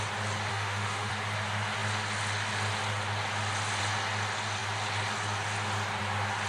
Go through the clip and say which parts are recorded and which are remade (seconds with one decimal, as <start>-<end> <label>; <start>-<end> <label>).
0.0-0.5 recorded; 0.5-1.1 remade; 1.1-6.5 recorded